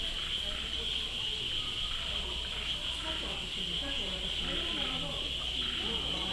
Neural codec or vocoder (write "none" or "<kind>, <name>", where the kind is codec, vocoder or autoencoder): none